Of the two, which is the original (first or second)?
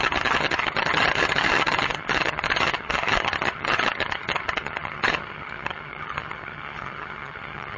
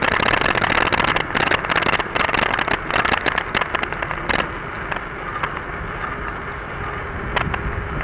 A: second